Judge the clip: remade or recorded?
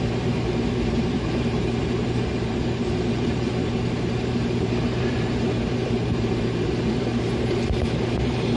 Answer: remade